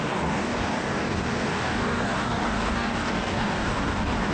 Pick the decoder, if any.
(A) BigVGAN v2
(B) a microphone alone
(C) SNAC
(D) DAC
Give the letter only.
D